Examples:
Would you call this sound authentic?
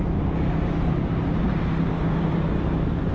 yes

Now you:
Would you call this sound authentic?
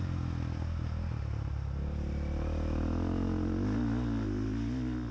yes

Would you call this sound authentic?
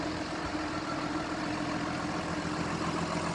yes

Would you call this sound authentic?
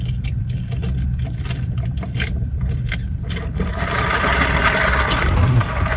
no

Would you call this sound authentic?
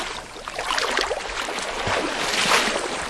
yes